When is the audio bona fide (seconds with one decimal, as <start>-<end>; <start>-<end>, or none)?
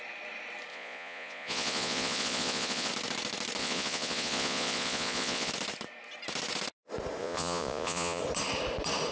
0.0-0.7; 2.9-3.6; 5.5-7.2; 8.2-9.1